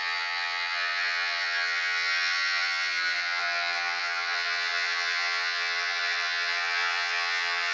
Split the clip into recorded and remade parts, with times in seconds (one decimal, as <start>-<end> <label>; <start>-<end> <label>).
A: 0.0-7.7 remade